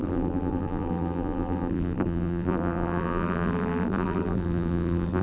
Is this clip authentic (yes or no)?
no